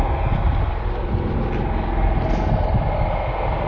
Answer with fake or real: real